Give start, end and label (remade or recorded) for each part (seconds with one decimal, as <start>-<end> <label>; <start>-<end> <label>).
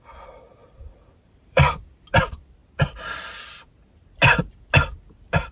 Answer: 0.0-0.6 recorded; 0.6-1.6 remade; 1.6-5.5 recorded